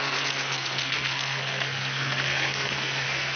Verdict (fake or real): fake